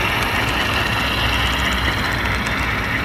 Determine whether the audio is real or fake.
real